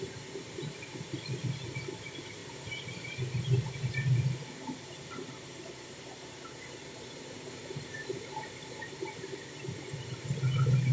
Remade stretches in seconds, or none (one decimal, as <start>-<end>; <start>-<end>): 0.0-10.9